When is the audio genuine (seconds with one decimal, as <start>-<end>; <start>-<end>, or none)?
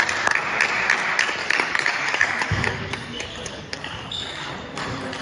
0.0-1.4; 4.5-5.2